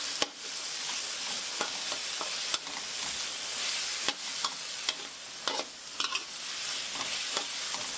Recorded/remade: recorded